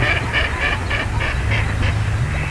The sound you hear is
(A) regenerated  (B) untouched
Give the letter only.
B